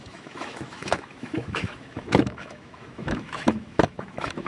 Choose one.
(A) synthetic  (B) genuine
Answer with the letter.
A